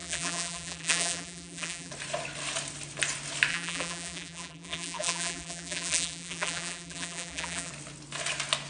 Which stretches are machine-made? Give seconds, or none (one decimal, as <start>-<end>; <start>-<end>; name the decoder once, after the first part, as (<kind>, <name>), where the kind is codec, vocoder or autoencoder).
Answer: 0.0-1.9 (vocoder, BigVGAN v2); 3.5-7.7